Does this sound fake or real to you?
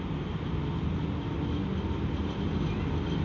real